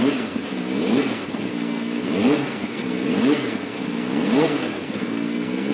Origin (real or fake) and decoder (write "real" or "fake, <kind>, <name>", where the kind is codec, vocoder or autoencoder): fake, codec, SNAC